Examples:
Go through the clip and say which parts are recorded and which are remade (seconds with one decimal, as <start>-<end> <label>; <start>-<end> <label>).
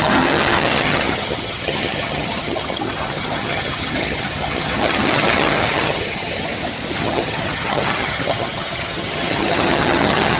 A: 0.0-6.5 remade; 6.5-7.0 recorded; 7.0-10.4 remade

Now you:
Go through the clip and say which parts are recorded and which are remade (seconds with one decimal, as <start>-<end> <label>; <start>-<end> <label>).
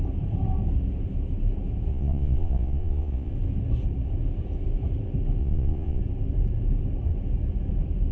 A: 0.0-1.9 recorded; 1.9-3.3 remade; 3.3-5.4 recorded; 5.4-6.0 remade; 6.0-8.1 recorded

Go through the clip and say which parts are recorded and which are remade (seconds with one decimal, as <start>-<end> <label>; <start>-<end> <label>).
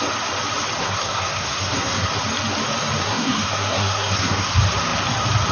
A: 0.0-0.8 recorded; 0.8-2.1 remade; 2.1-3.0 recorded; 3.0-4.5 remade; 4.5-5.5 recorded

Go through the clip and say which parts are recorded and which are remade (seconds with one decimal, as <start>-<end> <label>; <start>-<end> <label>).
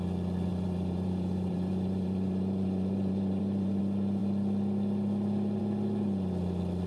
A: 0.0-0.5 recorded; 0.5-3.8 remade; 3.8-6.9 recorded